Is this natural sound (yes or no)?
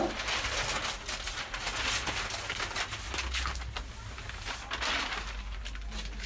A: yes